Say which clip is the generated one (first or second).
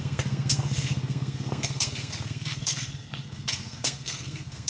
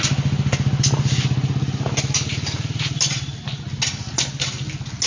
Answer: first